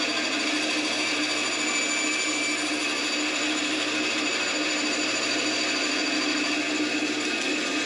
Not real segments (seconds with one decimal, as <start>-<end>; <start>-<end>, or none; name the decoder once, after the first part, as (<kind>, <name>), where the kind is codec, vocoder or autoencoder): none